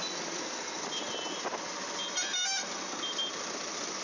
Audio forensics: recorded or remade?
recorded